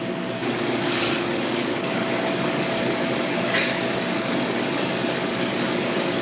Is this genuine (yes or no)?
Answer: no